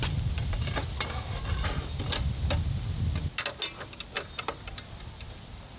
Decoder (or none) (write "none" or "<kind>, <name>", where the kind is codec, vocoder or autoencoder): none